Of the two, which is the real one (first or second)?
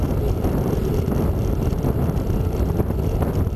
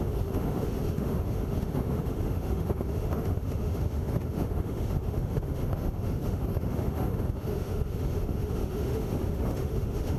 first